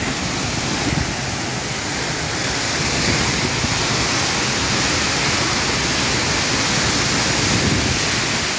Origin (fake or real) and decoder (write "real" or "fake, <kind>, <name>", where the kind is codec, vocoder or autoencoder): real